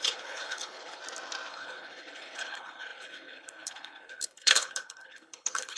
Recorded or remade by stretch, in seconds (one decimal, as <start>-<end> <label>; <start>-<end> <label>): 0.0-1.0 remade; 1.0-1.5 recorded; 1.5-5.8 remade